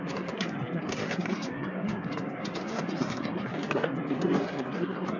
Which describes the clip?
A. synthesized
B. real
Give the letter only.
A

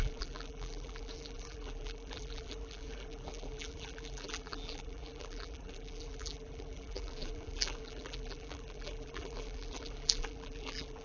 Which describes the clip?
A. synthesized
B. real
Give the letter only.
A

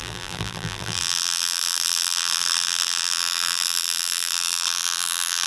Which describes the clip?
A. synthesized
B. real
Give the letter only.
A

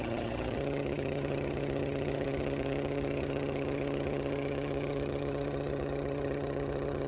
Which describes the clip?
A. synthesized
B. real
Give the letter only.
A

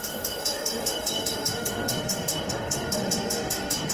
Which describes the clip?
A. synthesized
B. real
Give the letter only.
A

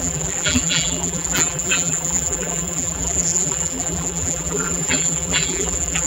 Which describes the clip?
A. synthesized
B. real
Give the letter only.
A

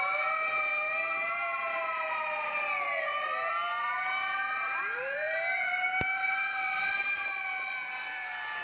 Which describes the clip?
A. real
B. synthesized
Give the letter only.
B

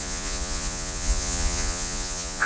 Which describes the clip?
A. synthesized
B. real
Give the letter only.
A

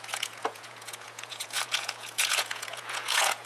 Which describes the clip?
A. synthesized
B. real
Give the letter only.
A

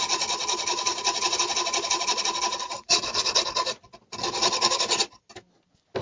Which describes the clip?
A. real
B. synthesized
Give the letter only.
A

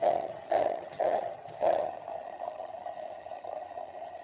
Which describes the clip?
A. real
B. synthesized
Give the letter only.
B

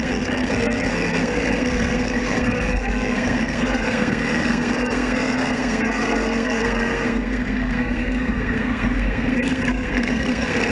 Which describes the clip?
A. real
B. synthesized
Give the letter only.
B